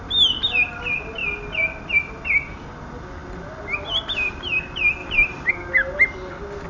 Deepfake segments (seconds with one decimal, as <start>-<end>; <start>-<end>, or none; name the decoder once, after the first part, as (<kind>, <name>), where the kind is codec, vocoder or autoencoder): 5.0-5.5 (vocoder, BigVGAN v2)